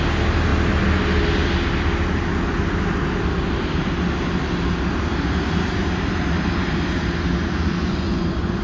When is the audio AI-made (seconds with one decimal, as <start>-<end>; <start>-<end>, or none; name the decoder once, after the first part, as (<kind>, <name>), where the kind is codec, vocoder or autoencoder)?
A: 7.8-8.6 (vocoder, Vocos)